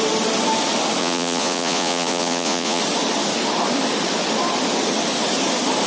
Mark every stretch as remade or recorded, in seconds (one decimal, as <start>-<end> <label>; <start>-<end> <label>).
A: 0.0-1.0 recorded; 1.0-2.8 remade; 2.8-5.9 recorded